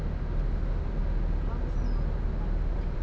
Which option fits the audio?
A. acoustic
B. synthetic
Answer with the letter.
A